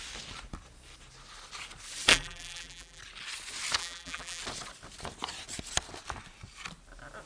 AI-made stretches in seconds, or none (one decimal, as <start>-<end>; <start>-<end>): 2.1-3.0; 3.8-4.4